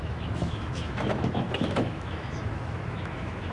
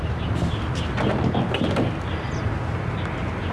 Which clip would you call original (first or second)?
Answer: second